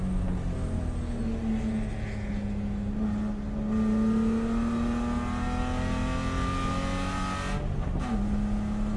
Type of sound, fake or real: real